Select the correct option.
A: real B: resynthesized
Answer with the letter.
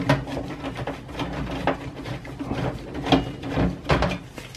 A